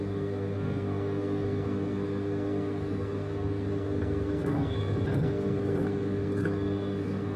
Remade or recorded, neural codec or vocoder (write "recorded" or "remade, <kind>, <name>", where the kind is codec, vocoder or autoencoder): remade, codec, SNAC